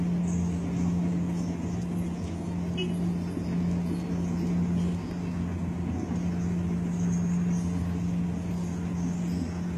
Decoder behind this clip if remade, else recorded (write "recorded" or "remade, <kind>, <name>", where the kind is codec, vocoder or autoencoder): recorded